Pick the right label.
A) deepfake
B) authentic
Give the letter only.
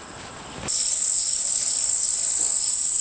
B